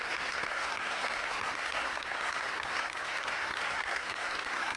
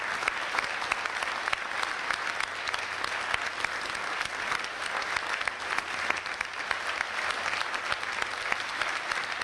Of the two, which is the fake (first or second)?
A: first